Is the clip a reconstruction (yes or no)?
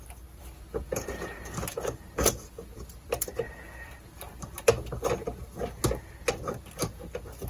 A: no